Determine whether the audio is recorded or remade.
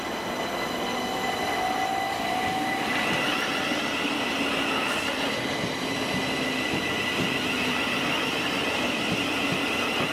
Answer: recorded